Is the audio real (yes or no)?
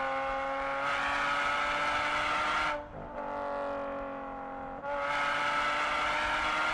yes